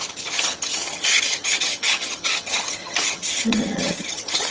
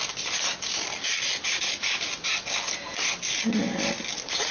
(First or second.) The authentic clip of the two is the second